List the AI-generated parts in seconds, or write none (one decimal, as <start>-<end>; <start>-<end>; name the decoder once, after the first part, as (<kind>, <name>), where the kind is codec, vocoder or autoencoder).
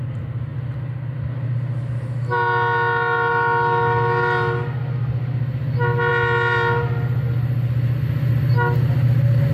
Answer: none